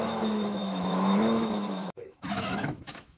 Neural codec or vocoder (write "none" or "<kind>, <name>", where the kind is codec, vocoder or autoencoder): autoencoder, DAC-VAE